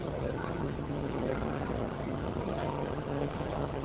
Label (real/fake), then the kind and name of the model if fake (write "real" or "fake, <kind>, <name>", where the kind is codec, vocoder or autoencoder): fake, vocoder, HiFi-GAN